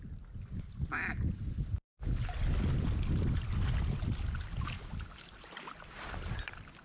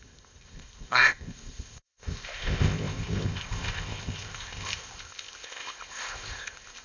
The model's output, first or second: second